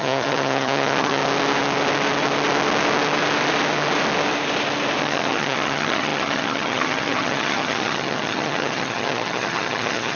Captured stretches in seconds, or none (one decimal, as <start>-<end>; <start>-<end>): 1.2-5.0